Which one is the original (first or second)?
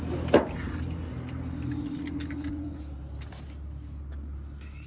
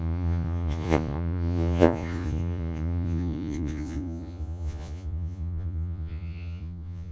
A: first